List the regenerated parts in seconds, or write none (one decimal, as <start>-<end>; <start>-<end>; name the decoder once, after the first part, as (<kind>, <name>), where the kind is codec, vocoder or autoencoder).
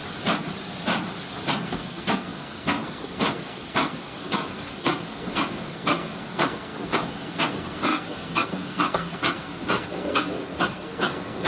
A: 1.5-11.5 (codec, SNAC)